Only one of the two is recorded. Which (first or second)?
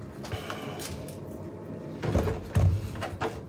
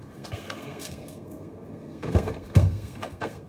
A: first